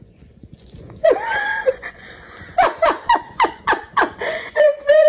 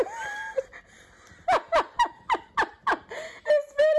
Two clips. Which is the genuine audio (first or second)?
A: second